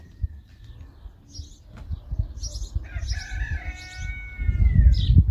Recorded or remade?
recorded